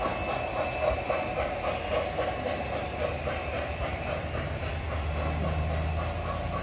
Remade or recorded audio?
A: recorded